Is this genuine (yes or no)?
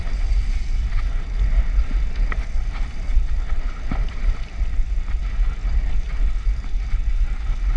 yes